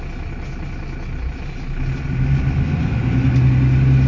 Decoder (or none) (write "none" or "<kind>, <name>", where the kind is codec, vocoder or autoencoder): none